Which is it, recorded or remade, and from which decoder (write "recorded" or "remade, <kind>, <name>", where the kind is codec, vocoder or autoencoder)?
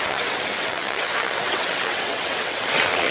remade, vocoder, WaveNeXt